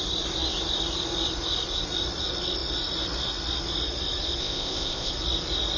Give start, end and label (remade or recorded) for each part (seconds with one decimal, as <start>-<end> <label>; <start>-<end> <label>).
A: 0.0-4.4 recorded; 4.4-5.1 remade; 5.1-5.8 recorded